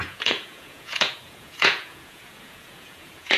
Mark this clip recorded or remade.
remade